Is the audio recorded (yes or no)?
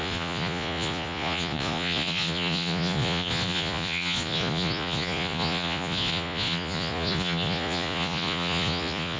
no